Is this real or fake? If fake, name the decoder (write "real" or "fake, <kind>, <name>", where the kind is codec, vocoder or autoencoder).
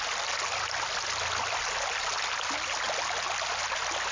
real